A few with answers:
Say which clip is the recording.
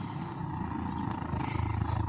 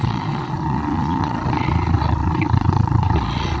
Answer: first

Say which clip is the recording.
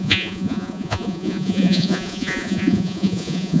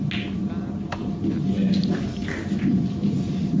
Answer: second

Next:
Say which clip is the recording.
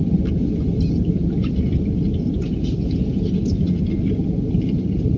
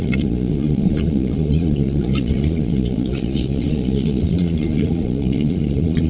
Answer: first